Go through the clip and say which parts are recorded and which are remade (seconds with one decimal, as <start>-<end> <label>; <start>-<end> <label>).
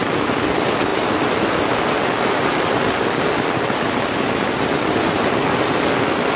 0.0-6.4 recorded